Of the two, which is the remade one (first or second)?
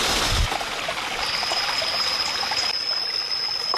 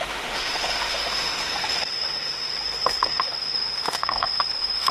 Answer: second